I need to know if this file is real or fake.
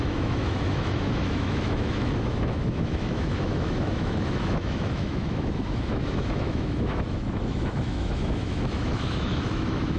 fake